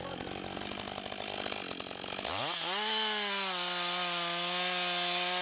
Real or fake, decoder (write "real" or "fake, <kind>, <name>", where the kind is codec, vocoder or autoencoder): real